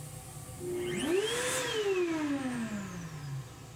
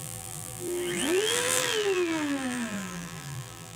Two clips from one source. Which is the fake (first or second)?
second